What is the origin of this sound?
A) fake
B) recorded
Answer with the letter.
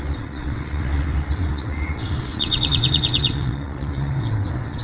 A